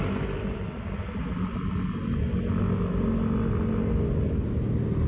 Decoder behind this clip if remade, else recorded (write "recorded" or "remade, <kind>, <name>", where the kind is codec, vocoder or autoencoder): recorded